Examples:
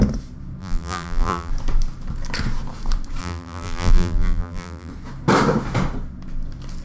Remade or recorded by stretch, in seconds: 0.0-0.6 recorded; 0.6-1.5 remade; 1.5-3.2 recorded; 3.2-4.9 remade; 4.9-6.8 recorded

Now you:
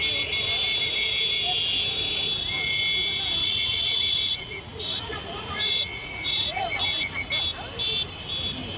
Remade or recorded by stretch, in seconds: 0.0-3.4 recorded; 3.4-6.6 remade; 6.6-8.8 recorded

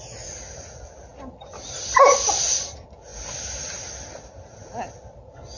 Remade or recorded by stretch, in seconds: 0.0-5.6 recorded

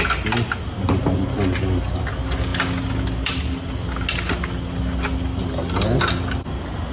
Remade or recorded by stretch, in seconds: 0.0-6.9 recorded

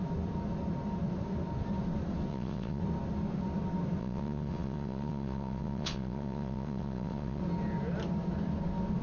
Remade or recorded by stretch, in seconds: 0.0-2.3 recorded; 2.3-2.8 remade; 2.8-4.0 recorded; 4.0-7.4 remade; 7.4-9.0 recorded

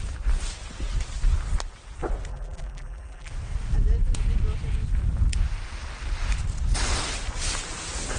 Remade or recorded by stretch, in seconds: 0.0-2.3 recorded; 2.3-3.3 remade; 3.3-8.2 recorded

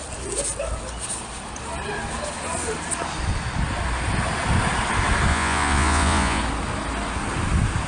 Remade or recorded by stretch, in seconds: 0.0-5.3 recorded; 5.3-6.4 remade; 6.4-7.9 recorded